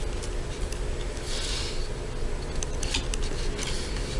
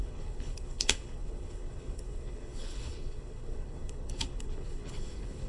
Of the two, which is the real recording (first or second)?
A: first